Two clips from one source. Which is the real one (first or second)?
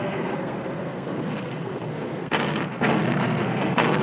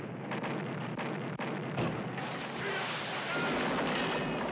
second